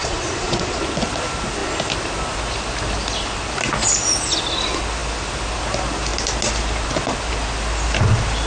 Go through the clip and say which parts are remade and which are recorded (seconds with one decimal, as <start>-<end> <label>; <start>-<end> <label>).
0.0-0.8 remade; 0.8-8.5 recorded